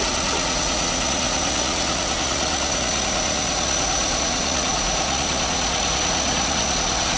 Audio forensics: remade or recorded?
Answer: remade